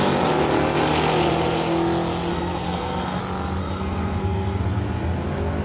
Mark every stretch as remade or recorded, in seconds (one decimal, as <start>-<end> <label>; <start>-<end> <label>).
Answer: 0.0-2.3 recorded; 2.3-3.2 remade; 3.2-3.6 recorded; 3.6-4.6 remade; 4.6-5.6 recorded